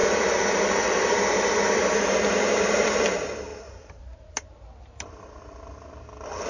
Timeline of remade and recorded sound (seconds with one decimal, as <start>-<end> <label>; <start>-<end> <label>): 0.0-3.0 remade; 3.0-3.5 recorded; 3.5-5.4 remade; 5.4-6.5 recorded